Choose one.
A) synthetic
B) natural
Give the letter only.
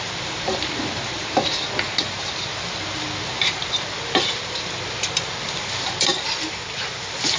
B